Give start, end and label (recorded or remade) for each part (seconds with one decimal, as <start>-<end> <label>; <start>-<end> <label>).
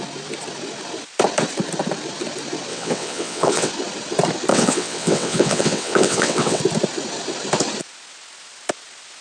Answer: 0.0-2.7 recorded; 2.7-3.7 remade; 3.7-4.5 recorded; 4.5-6.6 remade; 6.6-9.2 recorded